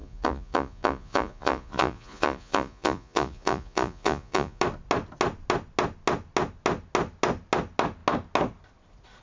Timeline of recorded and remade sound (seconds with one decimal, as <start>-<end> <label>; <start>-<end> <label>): 0.0-4.6 remade; 4.6-9.2 recorded